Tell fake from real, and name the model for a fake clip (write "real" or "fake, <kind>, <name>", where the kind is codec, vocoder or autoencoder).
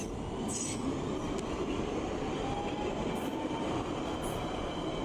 real